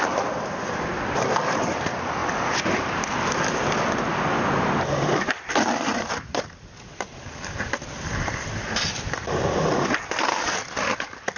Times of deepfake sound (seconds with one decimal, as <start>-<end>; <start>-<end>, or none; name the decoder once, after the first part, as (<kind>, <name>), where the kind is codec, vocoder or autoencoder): none